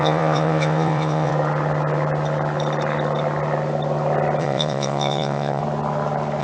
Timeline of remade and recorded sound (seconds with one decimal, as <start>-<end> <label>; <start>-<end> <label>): 0.0-1.3 remade; 1.3-4.4 recorded; 4.4-5.6 remade; 5.6-6.4 recorded